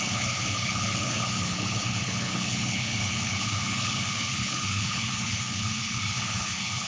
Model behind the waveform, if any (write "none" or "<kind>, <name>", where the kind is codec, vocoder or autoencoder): codec, HILCodec